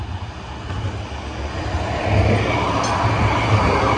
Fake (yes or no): no